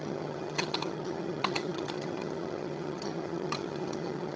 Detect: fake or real fake